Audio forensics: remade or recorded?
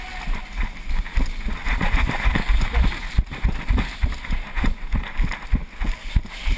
recorded